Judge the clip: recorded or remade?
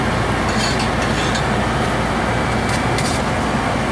recorded